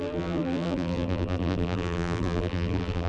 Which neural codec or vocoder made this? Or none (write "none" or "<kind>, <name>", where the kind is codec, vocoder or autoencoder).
vocoder, BigVGAN v2